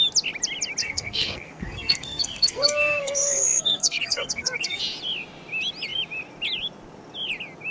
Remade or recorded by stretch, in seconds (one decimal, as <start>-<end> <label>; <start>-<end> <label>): 0.0-0.8 recorded; 0.8-4.8 remade; 4.8-7.7 recorded